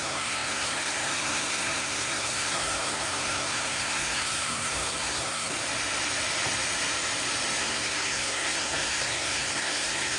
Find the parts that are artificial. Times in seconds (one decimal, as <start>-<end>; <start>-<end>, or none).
0.0-5.5; 7.6-10.2